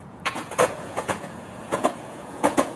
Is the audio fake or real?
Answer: fake